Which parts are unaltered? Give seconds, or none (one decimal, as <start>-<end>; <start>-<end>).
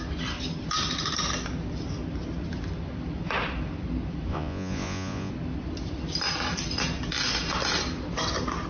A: 0.0-4.3; 5.3-8.7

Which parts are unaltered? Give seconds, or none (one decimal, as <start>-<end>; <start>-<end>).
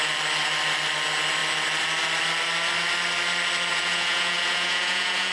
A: 0.0-3.7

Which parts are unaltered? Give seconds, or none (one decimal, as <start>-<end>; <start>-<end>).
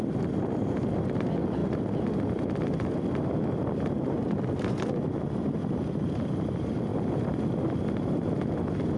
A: 0.0-9.0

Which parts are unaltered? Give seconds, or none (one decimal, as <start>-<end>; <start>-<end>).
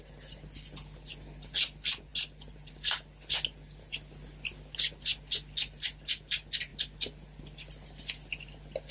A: 0.0-8.9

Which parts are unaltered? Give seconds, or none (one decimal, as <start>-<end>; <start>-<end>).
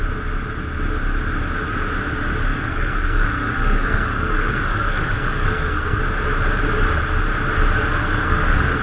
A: 0.0-2.5; 6.0-8.0